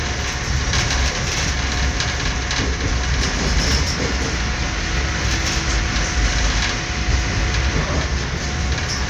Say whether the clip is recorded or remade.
recorded